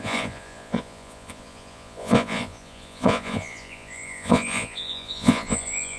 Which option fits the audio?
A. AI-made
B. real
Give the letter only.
A